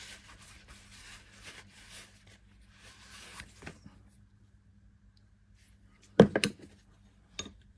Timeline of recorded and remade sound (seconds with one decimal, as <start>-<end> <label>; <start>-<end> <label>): 0.0-7.8 recorded